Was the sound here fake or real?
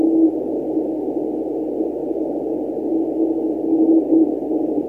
real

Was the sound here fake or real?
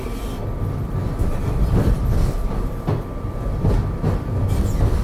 real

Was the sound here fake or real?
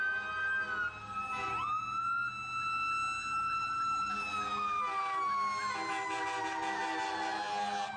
real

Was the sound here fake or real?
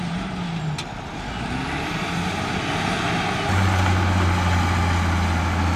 real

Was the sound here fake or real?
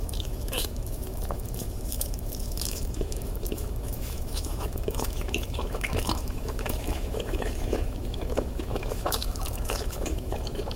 fake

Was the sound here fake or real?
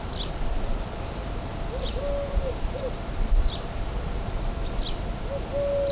real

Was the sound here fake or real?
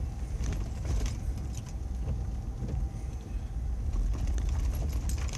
real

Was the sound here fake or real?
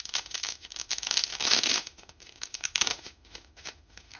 fake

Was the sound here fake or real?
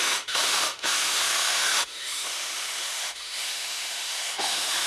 fake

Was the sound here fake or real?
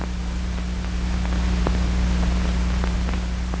real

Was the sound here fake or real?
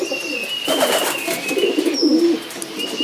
real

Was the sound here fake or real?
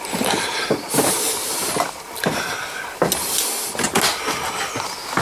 real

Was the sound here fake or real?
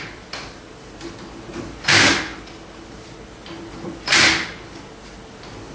real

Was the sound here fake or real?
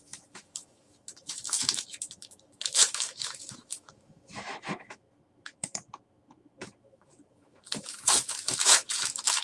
fake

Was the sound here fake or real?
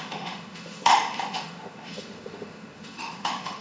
fake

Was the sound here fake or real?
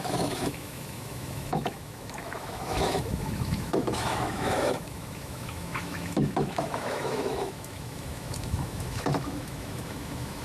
fake